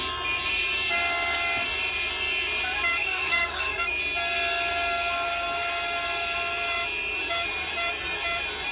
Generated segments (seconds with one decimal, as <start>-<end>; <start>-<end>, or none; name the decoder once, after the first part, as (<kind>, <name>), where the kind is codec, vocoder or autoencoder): 3.0-3.9 (codec, SNAC)